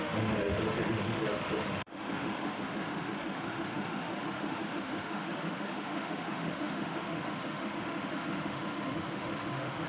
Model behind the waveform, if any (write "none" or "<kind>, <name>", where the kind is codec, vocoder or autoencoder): autoencoder, DAC-VAE